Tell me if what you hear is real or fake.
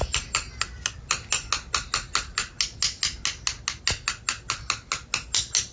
real